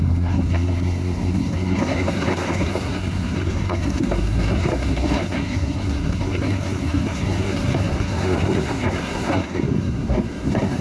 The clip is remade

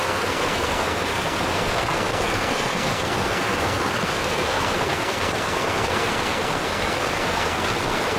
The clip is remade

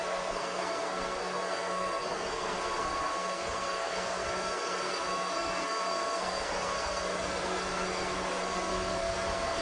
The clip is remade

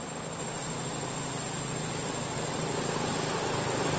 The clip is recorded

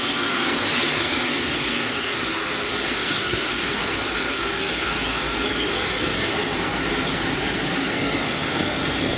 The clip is remade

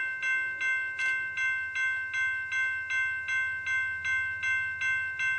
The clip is recorded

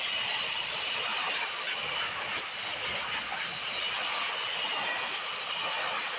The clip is recorded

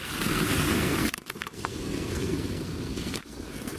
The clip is remade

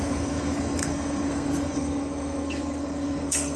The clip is remade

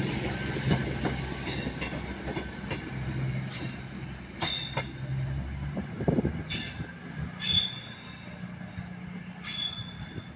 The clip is recorded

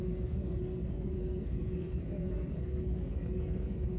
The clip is remade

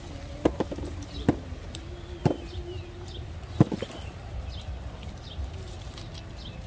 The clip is recorded